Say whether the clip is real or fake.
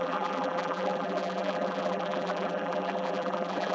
fake